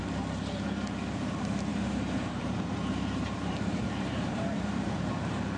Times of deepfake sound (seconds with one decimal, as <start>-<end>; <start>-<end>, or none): 1.7-5.1